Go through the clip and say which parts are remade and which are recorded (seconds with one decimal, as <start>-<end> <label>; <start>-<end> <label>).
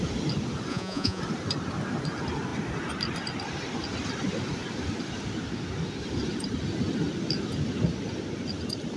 0.0-0.7 recorded; 0.7-1.2 remade; 1.2-9.0 recorded